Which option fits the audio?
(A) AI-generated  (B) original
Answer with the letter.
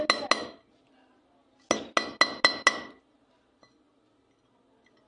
B